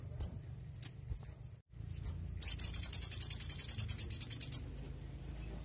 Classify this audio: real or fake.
real